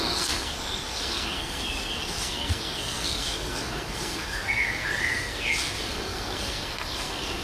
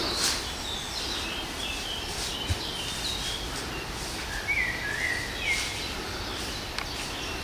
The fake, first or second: first